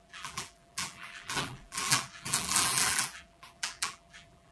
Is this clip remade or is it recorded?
remade